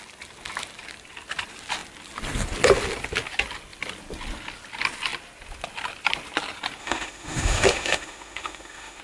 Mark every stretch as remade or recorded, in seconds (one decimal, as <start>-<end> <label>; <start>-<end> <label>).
0.0-6.8 recorded; 6.8-9.0 remade